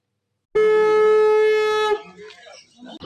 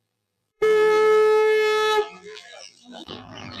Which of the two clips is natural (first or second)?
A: first